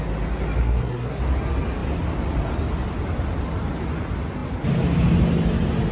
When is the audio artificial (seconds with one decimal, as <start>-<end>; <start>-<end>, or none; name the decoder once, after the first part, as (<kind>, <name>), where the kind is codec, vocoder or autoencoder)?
0.6-1.2 (codec, SNAC)

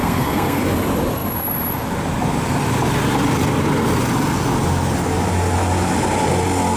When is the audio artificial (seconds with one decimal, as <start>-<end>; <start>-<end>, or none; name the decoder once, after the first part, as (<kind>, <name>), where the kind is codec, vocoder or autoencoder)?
0.0-0.6 (codec, SNAC)

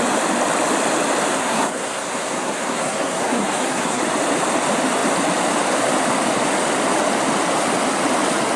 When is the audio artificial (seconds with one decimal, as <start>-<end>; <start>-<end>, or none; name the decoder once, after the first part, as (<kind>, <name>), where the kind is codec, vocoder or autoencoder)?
1.3-4.0 (codec, SNAC)

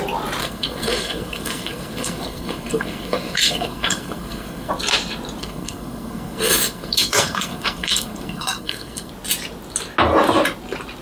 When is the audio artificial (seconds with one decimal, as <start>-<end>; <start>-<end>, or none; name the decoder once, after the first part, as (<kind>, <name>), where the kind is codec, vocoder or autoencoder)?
0.4-4.7 (codec, SNAC); 5.4-9.1

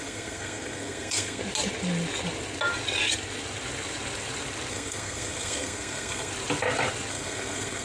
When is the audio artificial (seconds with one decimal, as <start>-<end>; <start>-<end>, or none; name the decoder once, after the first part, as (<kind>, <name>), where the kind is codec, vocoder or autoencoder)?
0.0-1.4 (codec, SNAC); 4.7-6.3; 7.1-7.8

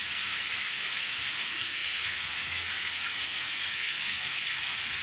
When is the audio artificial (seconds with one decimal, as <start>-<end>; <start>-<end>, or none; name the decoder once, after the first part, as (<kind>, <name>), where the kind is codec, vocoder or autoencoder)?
0.0-5.0 (codec, SNAC)